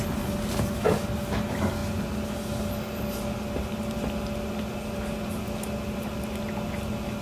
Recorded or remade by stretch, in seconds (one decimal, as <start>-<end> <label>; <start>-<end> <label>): 0.0-7.2 recorded